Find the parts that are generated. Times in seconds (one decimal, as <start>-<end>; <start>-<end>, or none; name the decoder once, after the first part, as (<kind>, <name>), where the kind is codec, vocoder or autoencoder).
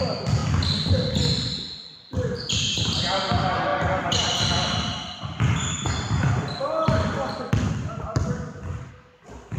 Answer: none